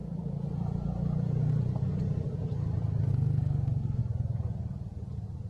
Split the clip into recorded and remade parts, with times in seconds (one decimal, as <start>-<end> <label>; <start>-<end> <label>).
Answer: 0.0-3.1 recorded; 3.1-4.0 remade; 4.0-5.5 recorded